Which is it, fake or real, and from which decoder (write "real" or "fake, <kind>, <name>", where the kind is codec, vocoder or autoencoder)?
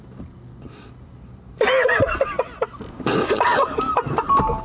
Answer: real